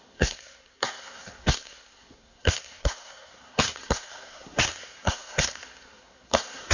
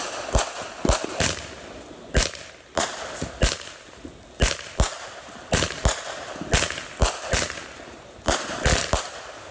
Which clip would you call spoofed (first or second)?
first